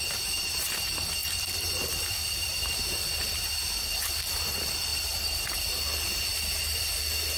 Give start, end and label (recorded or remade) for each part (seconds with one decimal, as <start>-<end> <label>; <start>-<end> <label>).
0.0-1.2 recorded; 1.2-2.6 remade; 2.6-4.9 recorded; 4.9-5.7 remade; 5.7-7.4 recorded